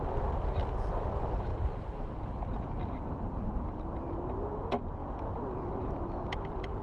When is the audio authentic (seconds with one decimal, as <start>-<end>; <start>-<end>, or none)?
0.0-6.8